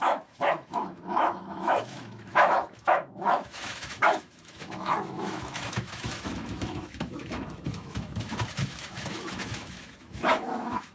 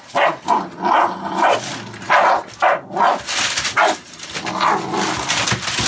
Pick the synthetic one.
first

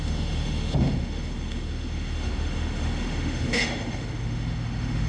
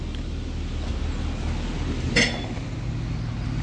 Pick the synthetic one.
first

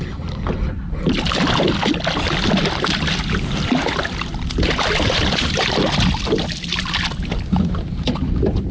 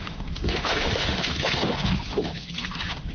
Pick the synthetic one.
second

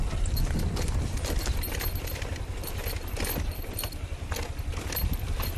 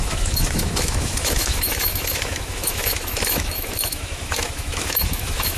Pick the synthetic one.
second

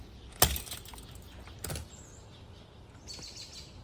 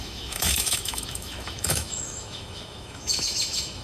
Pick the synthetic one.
second